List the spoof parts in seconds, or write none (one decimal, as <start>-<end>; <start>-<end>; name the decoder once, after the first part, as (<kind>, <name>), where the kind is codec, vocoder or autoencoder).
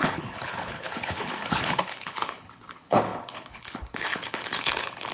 0.0-5.1 (codec, HILCodec)